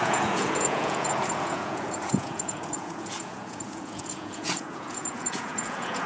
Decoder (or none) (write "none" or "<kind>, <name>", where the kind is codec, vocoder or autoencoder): vocoder, Vocos